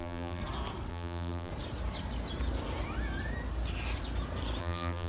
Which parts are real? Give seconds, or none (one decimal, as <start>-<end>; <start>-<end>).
0.4-0.9; 1.5-4.6